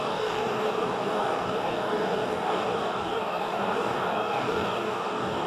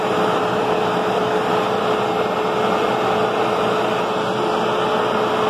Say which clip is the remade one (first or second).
first